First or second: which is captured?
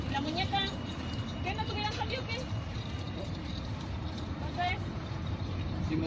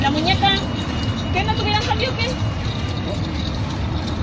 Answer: second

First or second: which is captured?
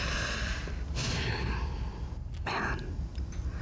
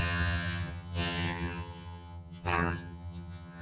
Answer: first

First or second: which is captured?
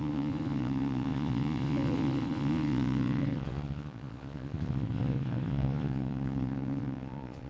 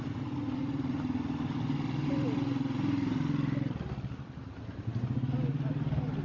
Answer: second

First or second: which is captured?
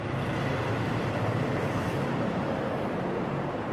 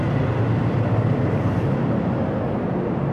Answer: second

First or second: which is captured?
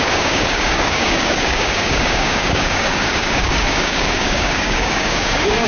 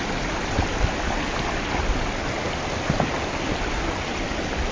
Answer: second